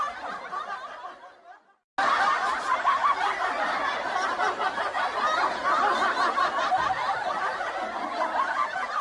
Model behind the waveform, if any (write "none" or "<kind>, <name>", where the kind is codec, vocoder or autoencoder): none